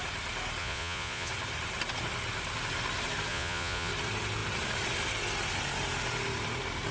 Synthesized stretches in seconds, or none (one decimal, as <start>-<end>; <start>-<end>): 0.6-1.3; 3.3-3.9